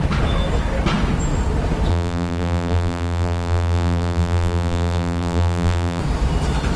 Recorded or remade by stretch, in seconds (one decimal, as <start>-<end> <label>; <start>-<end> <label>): 0.0-1.9 recorded; 1.9-6.0 remade; 6.0-6.8 recorded